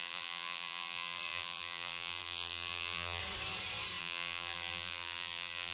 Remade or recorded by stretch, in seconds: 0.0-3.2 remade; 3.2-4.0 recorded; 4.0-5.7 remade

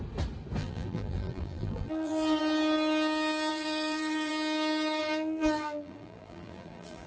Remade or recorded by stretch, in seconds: 0.0-0.6 recorded; 0.6-2.4 remade; 2.4-3.5 recorded; 3.5-4.3 remade; 4.3-5.0 recorded; 5.0-7.1 remade

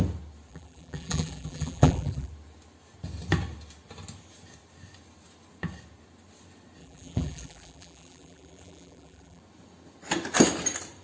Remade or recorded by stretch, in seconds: 0.0-0.5 recorded; 0.5-2.3 remade; 2.3-6.8 recorded; 6.8-9.4 remade; 9.4-11.0 recorded

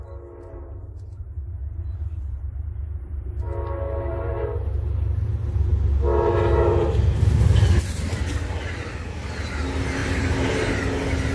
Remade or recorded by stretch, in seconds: 0.0-1.6 recorded; 1.6-3.4 remade; 3.4-10.0 recorded; 10.0-10.8 remade; 10.8-11.3 recorded

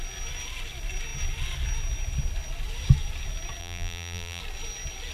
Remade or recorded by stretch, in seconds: 0.0-3.6 recorded; 3.6-4.4 remade; 4.4-5.1 recorded

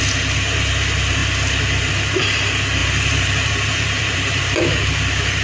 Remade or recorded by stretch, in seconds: 0.0-2.8 recorded; 2.8-4.6 remade; 4.6-5.4 recorded

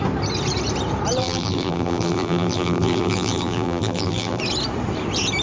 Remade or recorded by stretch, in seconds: 0.0-1.2 recorded; 1.2-4.4 remade; 4.4-5.4 recorded